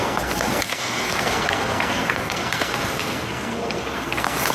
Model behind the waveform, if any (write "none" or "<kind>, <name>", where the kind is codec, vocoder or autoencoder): codec, SNAC